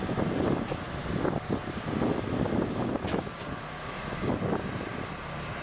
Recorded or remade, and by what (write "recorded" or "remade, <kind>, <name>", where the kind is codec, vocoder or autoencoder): recorded